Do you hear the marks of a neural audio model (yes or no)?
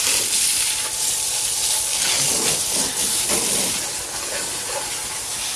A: no